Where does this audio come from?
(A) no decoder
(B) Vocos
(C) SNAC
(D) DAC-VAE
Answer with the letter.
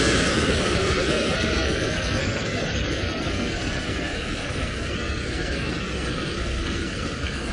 C